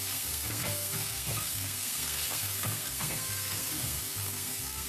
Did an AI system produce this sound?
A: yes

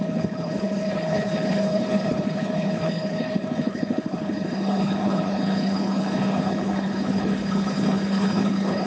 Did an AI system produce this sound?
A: yes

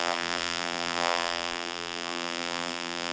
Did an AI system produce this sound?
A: yes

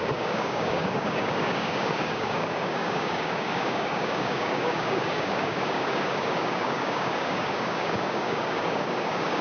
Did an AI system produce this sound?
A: yes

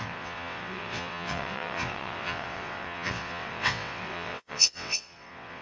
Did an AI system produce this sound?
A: yes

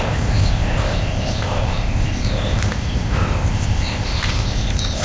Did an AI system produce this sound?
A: yes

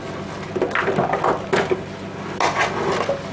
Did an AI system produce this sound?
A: no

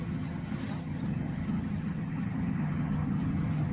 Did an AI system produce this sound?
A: yes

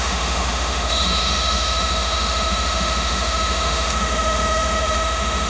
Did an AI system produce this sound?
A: yes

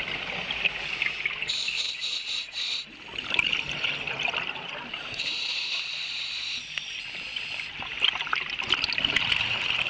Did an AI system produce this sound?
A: no